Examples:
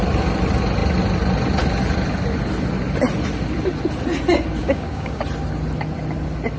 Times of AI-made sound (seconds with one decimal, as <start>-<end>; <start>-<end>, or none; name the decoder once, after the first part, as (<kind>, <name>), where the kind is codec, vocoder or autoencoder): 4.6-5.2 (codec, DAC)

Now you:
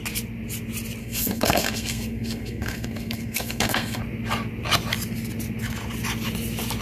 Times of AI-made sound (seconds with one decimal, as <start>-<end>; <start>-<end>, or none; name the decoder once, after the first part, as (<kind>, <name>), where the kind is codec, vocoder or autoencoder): 1.0-4.0 (codec, SNAC)

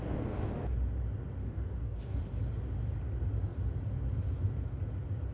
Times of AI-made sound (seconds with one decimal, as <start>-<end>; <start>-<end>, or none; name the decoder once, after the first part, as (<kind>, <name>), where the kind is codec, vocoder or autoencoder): 0.0-0.5 (codec, DAC); 1.4-2.2

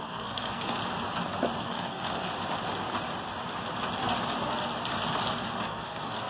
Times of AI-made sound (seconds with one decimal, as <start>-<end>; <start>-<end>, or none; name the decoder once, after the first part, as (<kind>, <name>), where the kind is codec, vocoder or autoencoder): 0.0-0.8 (codec, SNAC); 1.6-2.3; 5.5-6.3

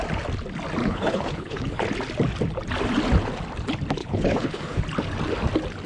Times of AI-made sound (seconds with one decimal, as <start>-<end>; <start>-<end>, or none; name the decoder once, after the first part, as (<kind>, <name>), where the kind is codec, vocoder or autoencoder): 0.8-1.8 (codec, HILCodec); 4.0-4.8

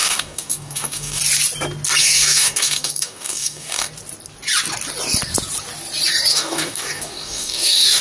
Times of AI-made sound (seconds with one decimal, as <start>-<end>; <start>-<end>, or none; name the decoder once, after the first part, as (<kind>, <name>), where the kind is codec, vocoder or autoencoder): 0.0-1.2 (codec, DAC); 2.0-3.9; 6.3-8.0